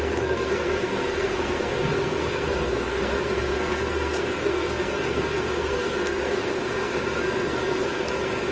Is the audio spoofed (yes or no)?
yes